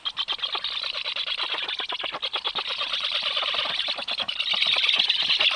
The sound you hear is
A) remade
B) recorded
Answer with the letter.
B